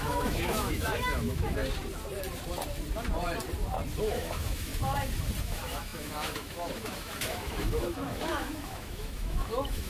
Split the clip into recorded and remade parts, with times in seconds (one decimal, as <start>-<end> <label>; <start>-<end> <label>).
0.0-1.6 remade; 1.6-4.0 recorded; 4.0-4.7 remade; 4.7-5.4 recorded; 5.4-9.9 remade